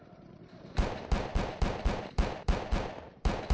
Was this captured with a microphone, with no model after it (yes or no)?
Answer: no